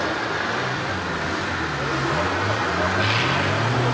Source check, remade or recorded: recorded